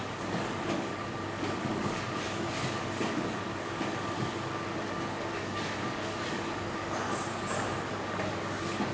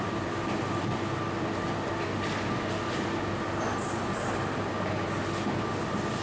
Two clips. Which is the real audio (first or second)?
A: second